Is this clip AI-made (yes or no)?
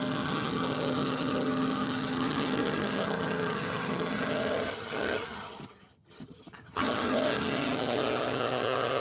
yes